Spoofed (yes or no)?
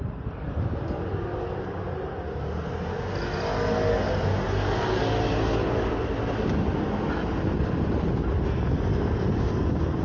no